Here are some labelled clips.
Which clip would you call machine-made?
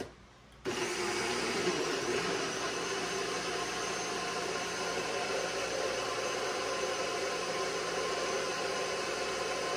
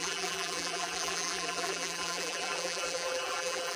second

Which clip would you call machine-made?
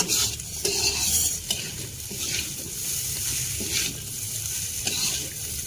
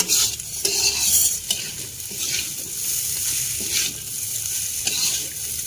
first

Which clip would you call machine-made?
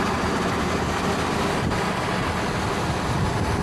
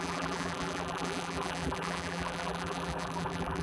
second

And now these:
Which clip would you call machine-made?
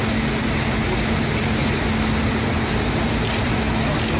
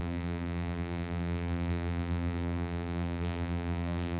second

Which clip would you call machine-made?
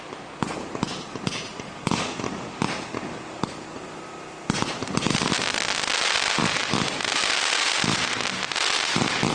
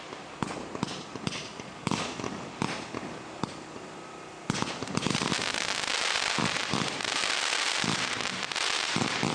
second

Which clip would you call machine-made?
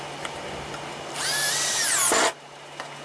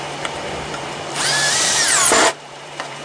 second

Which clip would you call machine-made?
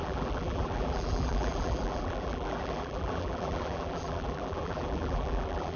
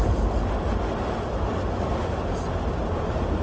first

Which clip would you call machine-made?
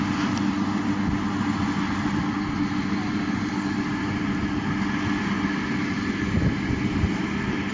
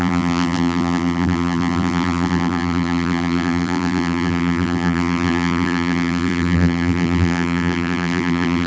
second